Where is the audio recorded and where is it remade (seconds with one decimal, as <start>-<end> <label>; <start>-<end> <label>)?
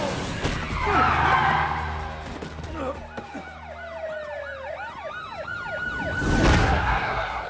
0.0-6.6 recorded; 6.6-7.5 remade